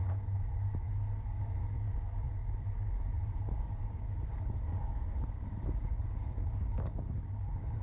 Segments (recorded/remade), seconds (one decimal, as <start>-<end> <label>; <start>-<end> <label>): 0.0-7.8 remade